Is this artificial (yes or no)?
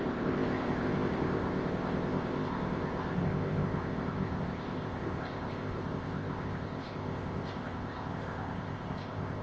yes